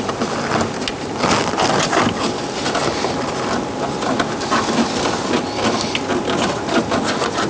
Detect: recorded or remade recorded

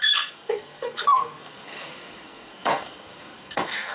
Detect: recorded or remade remade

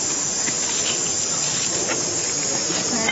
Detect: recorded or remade recorded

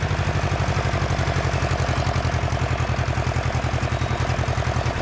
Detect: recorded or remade recorded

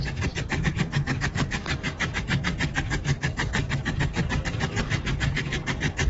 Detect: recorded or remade remade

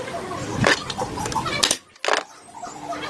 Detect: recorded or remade recorded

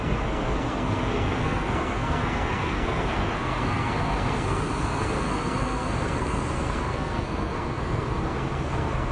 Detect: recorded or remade remade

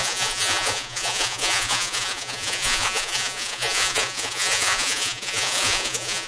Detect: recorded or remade remade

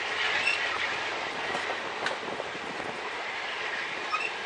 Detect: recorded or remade remade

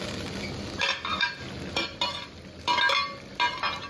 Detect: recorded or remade recorded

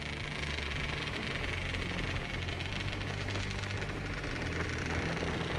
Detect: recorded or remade recorded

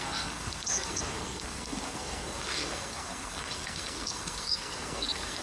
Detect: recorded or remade remade